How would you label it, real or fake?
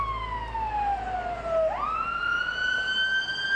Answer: real